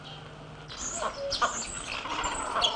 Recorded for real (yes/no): yes